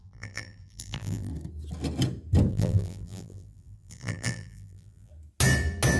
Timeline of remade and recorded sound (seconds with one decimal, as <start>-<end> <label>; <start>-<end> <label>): 0.0-1.3 remade; 1.3-2.5 recorded; 2.5-5.1 remade; 5.1-6.0 recorded